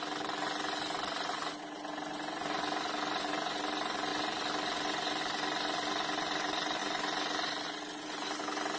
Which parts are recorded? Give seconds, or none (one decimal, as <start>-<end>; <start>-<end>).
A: 0.0-8.8

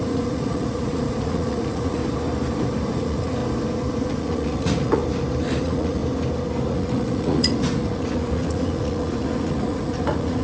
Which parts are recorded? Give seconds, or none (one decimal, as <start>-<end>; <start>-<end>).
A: 2.0-2.9; 3.4-4.0; 5.0-5.6; 6.0-6.7

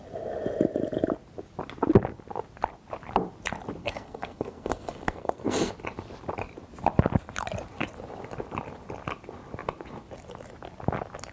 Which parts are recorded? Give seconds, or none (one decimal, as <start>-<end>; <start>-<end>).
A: 0.0-3.8; 5.7-11.3